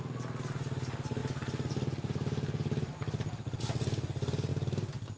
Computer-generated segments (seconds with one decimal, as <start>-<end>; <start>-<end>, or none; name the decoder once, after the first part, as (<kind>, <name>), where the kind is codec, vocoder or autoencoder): none